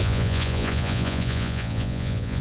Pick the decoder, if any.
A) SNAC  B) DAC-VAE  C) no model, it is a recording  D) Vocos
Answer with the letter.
D